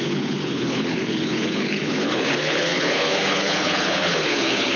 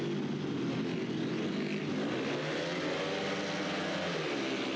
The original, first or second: second